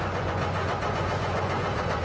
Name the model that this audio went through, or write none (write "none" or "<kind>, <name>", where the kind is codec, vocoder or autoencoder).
vocoder, Vocos